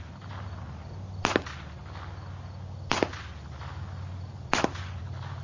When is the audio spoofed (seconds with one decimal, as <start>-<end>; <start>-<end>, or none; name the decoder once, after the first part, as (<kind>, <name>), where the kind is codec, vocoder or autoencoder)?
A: none